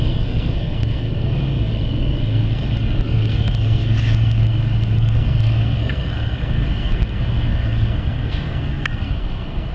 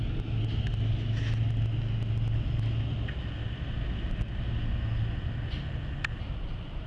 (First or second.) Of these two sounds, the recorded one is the second